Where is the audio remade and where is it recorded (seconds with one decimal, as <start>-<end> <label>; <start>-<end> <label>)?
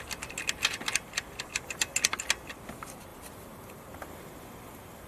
0.0-3.1 recorded; 3.1-5.1 remade